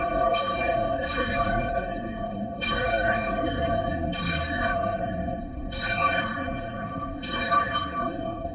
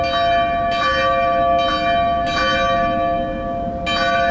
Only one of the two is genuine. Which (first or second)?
second